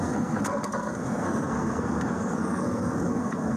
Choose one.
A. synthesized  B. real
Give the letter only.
A